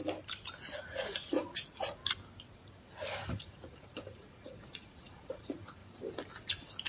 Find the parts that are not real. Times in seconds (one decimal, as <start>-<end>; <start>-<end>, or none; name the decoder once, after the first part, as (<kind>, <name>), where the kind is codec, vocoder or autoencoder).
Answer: 0.8-2.0 (vocoder, Vocos); 3.3-5.8